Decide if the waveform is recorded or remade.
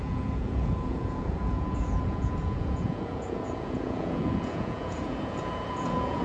remade